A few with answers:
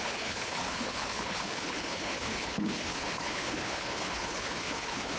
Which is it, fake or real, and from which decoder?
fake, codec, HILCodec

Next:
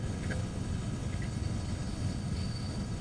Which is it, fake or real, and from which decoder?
fake, codec, HILCodec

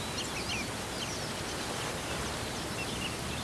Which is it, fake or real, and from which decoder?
real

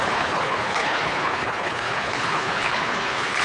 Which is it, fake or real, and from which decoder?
fake, codec, HILCodec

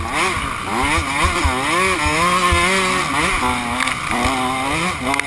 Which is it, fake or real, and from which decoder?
real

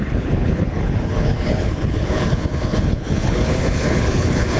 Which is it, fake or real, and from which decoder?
fake, codec, HILCodec